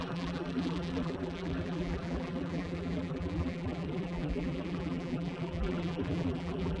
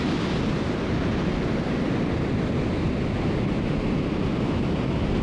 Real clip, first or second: second